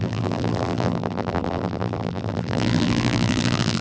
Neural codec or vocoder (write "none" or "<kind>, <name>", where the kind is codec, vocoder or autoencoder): vocoder, BigVGAN v2